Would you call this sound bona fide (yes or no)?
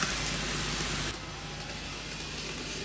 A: yes